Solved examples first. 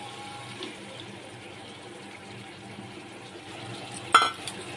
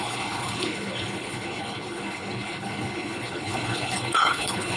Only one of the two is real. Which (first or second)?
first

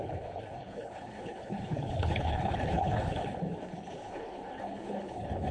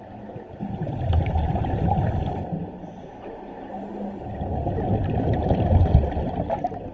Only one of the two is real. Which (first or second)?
second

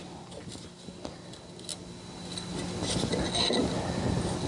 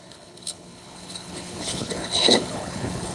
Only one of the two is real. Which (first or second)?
first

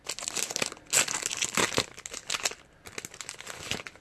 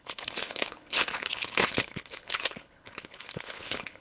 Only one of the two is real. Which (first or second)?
first